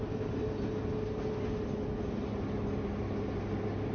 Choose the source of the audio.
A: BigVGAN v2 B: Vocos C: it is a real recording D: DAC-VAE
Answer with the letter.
C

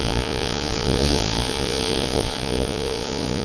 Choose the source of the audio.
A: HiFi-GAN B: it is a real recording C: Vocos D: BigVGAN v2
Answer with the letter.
C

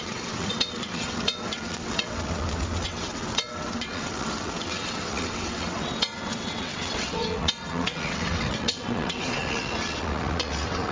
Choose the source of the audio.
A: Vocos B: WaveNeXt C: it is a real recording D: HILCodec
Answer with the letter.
B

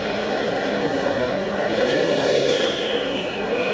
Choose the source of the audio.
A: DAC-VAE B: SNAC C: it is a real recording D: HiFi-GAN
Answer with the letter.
B